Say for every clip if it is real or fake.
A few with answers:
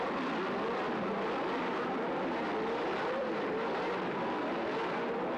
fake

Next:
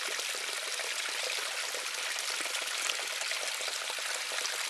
real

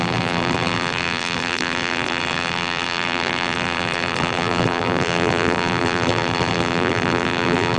fake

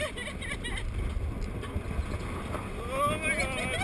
real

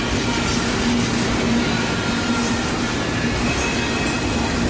real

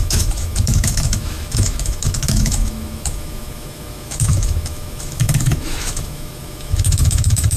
fake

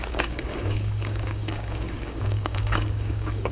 fake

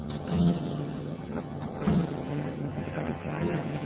fake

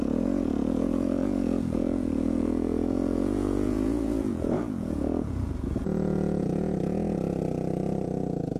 fake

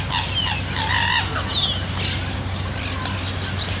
real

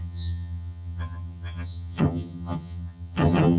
fake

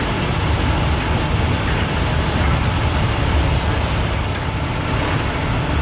real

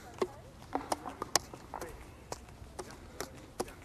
real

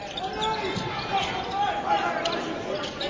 real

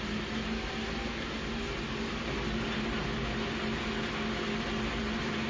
real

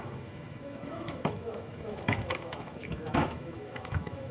fake